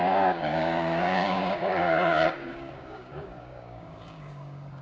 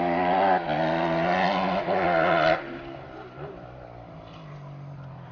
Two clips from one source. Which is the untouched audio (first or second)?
second